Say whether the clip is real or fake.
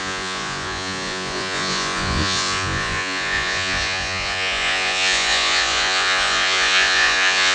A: fake